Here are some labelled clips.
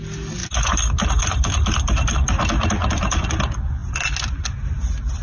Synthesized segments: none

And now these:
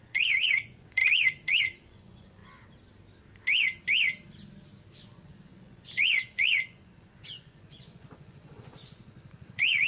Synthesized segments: 0.0-2.4 (vocoder, Vocos); 5.0-9.9

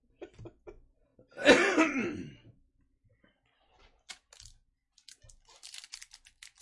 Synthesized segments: none

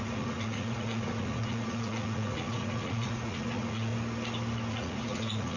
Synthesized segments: 0.0-3.9 (vocoder, Vocos); 4.7-5.6

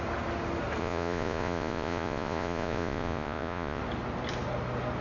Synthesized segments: 0.8-3.8 (vocoder, Vocos)